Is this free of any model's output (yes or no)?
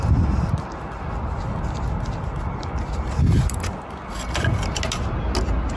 yes